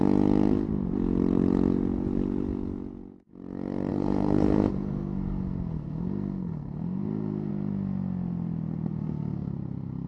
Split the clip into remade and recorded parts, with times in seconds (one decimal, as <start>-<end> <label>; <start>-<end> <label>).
0.0-3.9 recorded; 3.9-7.5 remade; 7.5-9.0 recorded; 9.0-9.5 remade; 9.5-10.1 recorded